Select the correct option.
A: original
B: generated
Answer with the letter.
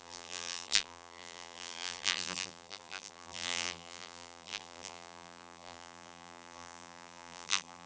B